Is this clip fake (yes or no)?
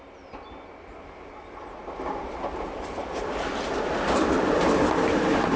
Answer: no